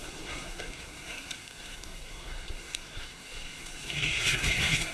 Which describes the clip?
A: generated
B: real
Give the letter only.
A